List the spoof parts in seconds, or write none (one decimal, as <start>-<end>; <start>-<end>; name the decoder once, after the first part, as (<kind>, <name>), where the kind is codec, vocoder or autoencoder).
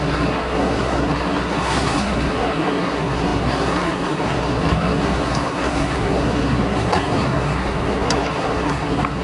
0.0-9.2 (codec, SNAC)